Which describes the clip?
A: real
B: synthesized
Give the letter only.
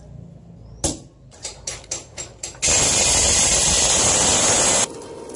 A